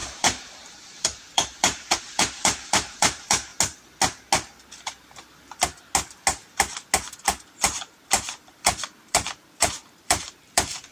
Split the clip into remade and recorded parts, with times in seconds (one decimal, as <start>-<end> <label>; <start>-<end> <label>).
0.0-3.5 remade; 3.5-7.4 recorded; 7.4-10.9 remade